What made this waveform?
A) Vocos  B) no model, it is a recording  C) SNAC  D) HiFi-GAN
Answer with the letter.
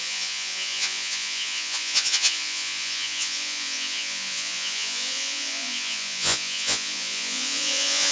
A